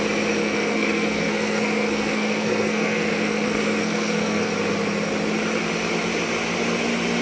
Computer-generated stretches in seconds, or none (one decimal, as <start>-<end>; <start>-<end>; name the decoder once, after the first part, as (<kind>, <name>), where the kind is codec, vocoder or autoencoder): 0.4-4.5 (codec, SNAC)